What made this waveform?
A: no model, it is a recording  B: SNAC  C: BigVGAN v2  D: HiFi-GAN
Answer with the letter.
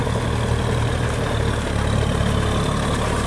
A